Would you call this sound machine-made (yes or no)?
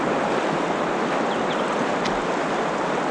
no